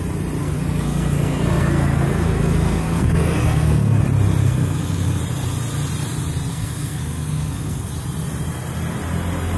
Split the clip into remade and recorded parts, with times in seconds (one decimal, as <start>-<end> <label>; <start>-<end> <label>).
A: 0.0-0.4 recorded; 0.4-4.0 remade; 4.0-4.4 recorded; 4.4-5.2 remade; 5.2-6.5 recorded; 6.5-7.9 remade; 7.9-9.6 recorded